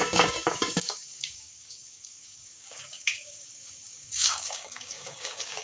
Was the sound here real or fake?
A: fake